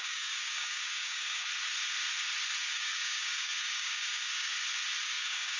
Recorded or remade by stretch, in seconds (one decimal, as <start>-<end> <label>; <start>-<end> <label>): 0.0-1.5 remade; 1.5-2.6 recorded; 2.6-4.5 remade; 4.5-5.0 recorded; 5.0-5.6 remade